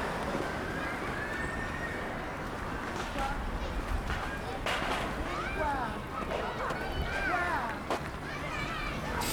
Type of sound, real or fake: real